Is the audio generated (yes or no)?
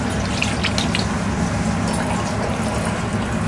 no